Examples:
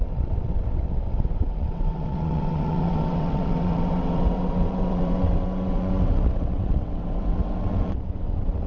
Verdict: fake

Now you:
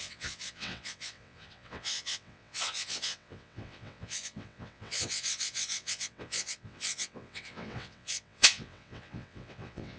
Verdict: fake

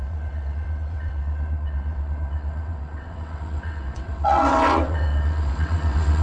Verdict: fake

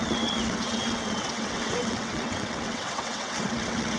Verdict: fake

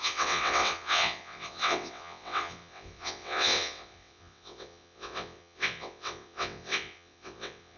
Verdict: fake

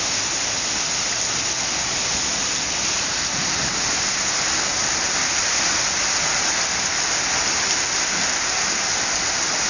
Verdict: real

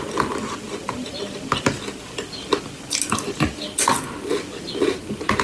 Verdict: real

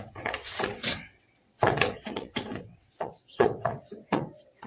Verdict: fake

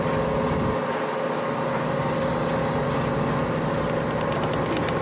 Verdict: real